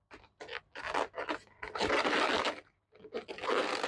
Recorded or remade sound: recorded